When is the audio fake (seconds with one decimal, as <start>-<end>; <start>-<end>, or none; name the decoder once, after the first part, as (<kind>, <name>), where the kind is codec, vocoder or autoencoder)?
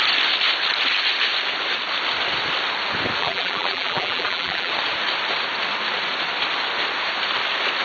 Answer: 3.2-4.7 (vocoder, BigVGAN v2)